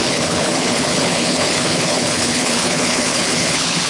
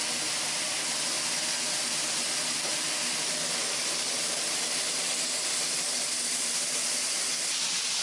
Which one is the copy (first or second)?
first